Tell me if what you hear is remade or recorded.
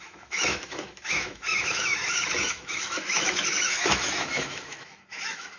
remade